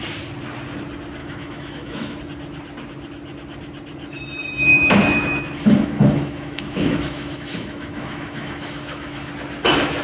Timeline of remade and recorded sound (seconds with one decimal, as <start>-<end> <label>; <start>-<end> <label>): 0.0-1.2 recorded; 1.2-2.2 remade; 2.2-4.7 recorded; 4.7-9.3 remade; 9.3-10.0 recorded